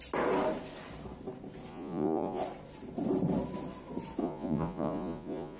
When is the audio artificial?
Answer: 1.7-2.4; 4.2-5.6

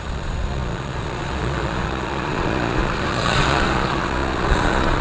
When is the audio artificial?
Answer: 0.0-5.0

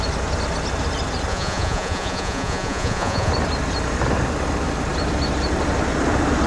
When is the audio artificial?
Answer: 1.3-3.3

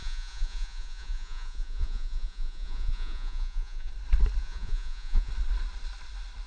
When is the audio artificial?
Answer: 0.0-3.9; 4.4-5.3